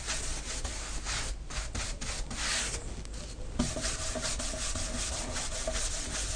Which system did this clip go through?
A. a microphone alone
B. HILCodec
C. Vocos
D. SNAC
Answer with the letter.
A